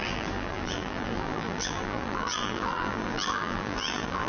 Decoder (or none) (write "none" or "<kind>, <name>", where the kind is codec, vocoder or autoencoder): vocoder, BigVGAN v2